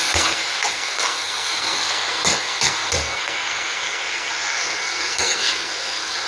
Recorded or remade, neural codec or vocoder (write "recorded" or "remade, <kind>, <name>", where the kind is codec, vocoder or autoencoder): remade, codec, SNAC